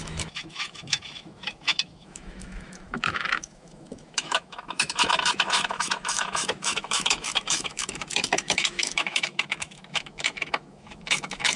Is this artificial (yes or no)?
yes